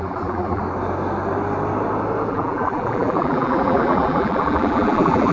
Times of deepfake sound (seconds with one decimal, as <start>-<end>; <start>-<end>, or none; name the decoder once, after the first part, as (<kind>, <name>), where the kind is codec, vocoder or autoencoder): 0.0-0.6 (vocoder, BigVGAN v2); 2.3-5.3